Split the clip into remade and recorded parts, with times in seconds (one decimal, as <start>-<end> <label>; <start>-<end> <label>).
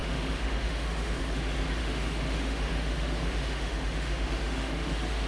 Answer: 0.0-1.2 remade; 1.2-1.8 recorded; 1.8-5.3 remade